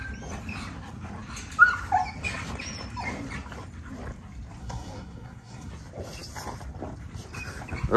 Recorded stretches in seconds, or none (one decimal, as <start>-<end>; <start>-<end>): 0.0-4.6; 5.7-8.0